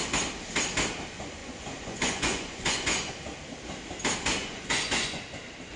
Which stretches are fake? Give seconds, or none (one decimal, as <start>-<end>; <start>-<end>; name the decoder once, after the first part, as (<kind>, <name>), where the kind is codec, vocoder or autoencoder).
1.4-3.1 (vocoder, Vocos); 4.4-5.2